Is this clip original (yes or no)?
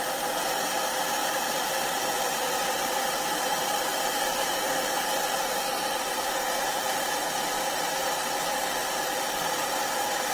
yes